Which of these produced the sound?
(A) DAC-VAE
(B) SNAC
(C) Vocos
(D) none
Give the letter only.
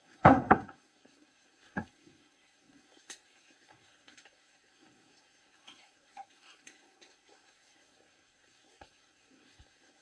B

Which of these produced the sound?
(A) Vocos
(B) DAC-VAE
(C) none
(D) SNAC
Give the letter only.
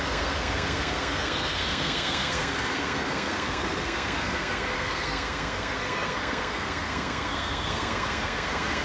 D